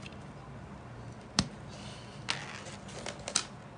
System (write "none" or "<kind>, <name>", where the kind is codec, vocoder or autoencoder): none